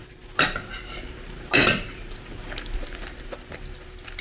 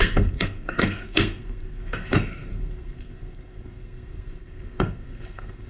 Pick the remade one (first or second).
second